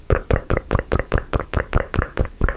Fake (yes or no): yes